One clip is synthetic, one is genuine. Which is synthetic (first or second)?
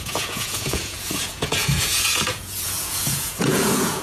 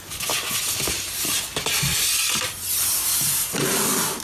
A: first